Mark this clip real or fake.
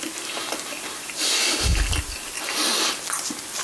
real